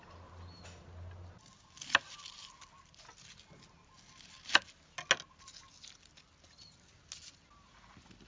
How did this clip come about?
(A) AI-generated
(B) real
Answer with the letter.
B